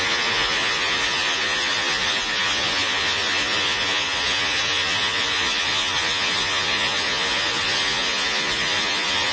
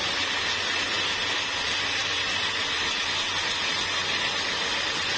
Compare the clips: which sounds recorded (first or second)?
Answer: second